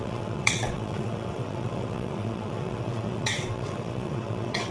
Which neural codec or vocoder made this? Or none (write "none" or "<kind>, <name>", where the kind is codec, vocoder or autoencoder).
vocoder, WaveNeXt